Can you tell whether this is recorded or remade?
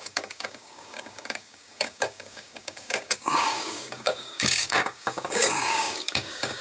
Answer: remade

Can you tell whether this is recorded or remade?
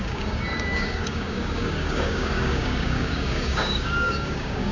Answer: remade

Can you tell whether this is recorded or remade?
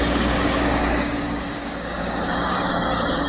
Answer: remade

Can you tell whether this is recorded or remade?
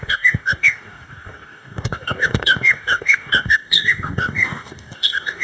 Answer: remade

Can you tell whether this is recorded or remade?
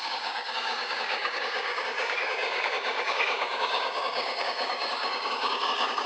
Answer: remade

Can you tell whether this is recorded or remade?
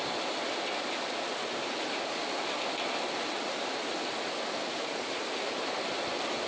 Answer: recorded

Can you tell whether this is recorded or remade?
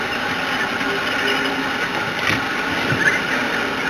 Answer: recorded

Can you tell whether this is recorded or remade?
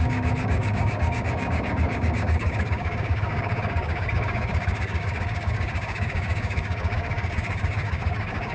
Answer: remade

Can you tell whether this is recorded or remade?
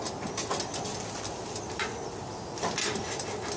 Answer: recorded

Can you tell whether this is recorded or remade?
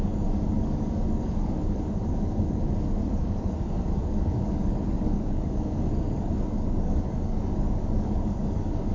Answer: remade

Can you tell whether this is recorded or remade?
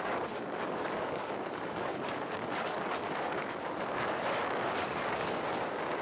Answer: remade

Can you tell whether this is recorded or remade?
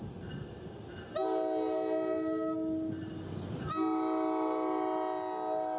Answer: recorded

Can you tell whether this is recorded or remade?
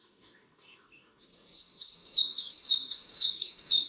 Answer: remade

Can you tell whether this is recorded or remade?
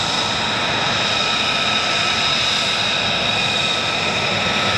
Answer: recorded